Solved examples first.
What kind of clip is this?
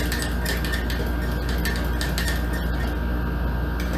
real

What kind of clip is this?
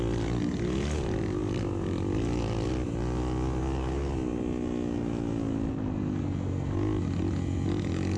real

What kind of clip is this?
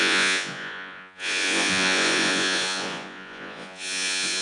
fake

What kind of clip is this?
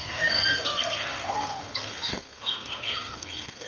fake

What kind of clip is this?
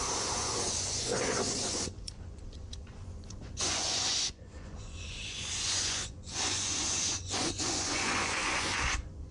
fake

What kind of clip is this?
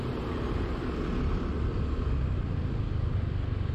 real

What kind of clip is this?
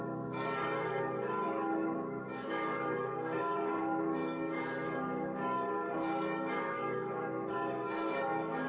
fake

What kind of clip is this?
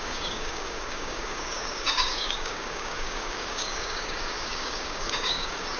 fake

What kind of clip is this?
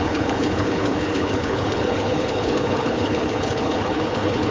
fake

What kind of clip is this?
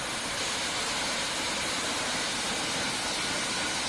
real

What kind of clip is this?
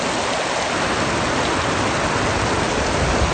real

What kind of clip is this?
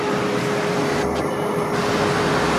real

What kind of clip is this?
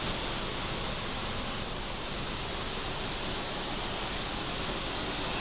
real